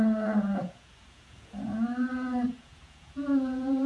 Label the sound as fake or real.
fake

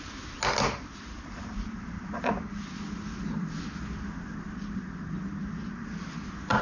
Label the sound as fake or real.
real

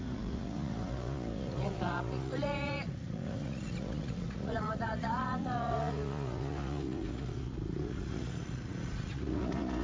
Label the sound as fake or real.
fake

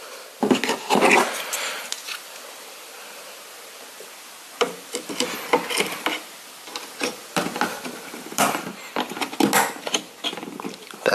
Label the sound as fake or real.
real